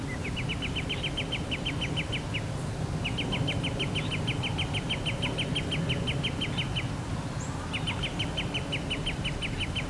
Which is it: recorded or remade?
recorded